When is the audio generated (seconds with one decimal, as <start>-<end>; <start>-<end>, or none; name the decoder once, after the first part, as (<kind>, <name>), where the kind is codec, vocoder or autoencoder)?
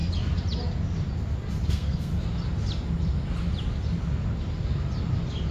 1.7-2.1 (codec, SNAC)